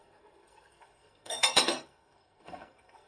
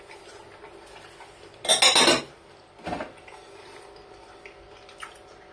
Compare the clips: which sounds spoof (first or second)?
first